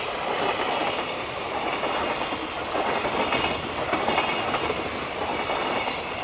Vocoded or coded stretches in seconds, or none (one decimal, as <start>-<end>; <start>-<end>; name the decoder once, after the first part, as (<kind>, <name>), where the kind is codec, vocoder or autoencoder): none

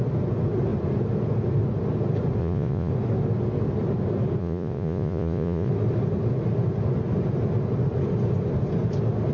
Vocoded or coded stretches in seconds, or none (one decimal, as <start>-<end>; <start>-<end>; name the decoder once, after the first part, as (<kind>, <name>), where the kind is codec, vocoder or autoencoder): 2.4-2.9 (vocoder, Vocos); 4.4-5.7

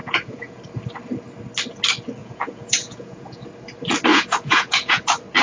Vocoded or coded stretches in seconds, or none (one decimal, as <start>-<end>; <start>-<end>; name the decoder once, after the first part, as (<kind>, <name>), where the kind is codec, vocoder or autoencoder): 0.0-0.6 (vocoder, Vocos); 2.2-3.4; 4.1-5.0

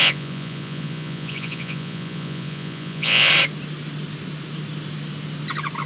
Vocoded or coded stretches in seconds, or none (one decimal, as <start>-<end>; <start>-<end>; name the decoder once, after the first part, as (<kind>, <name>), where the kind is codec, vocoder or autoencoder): 0.0-3.3 (vocoder, Vocos)

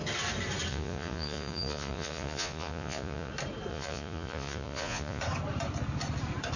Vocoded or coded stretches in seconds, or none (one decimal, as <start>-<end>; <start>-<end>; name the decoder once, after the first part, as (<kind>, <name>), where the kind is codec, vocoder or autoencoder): 0.7-3.3 (vocoder, Vocos); 3.7-5.2

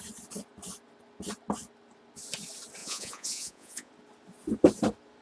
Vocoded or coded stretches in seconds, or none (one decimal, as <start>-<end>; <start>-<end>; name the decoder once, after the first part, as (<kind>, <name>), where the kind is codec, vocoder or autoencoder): 2.8-3.9 (vocoder, Vocos)

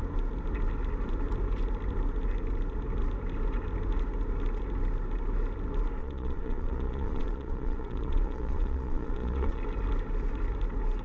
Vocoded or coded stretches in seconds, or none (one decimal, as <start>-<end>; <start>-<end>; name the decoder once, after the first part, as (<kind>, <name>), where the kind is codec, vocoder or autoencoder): 6.0-9.6 (vocoder, Vocos)

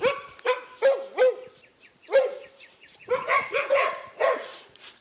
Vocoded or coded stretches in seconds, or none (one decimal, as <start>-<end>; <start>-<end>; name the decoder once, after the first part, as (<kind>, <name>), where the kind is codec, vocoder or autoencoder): 1.7-5.0 (vocoder, Vocos)